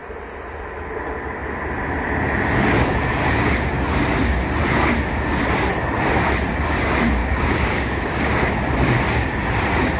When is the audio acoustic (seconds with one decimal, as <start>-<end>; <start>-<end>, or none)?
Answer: 0.0-7.2; 8.2-10.0